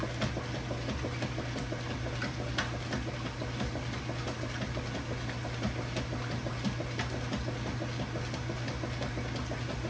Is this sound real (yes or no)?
yes